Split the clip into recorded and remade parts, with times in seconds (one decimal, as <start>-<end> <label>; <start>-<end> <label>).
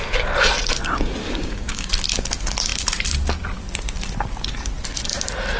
0.0-1.2 recorded; 1.2-1.9 remade; 1.9-5.6 recorded